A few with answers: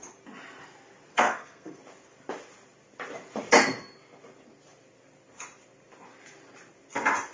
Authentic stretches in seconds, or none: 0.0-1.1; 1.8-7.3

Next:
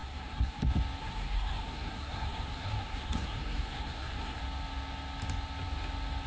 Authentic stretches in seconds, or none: 0.6-1.0; 4.4-6.3

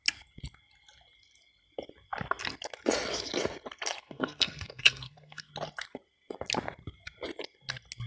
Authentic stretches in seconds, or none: 0.0-4.0; 5.5-8.1

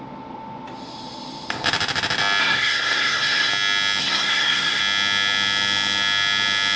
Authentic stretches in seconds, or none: 0.0-2.4; 3.5-4.0; 4.8-6.8